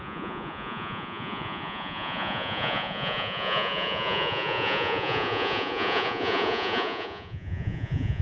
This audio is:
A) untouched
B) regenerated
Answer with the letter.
B